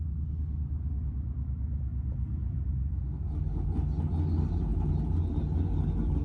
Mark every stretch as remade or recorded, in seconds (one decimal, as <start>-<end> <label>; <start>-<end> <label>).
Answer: 0.0-1.9 recorded; 1.9-3.0 remade; 3.0-6.2 recorded